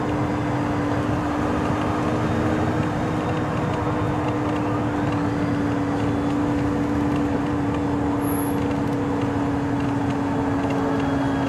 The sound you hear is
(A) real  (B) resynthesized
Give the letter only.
A